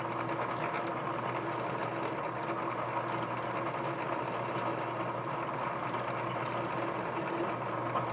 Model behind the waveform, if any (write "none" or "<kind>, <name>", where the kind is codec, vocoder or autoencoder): none